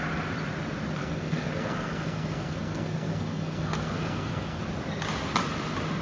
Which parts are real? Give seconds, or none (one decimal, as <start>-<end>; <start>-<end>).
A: 0.0-1.0; 4.6-6.0